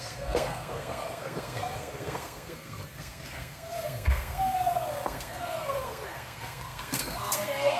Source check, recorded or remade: remade